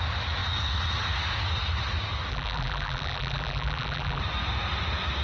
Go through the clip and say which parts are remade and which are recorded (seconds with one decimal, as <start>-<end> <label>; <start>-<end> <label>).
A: 0.0-2.3 recorded; 2.3-4.2 remade; 4.2-5.2 recorded